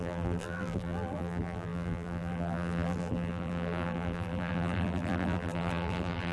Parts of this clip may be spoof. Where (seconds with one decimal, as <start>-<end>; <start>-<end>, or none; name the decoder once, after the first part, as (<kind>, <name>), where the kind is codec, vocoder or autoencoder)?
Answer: 0.0-6.3 (vocoder, BigVGAN v2)